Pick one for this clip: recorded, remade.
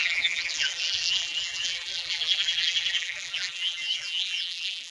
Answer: remade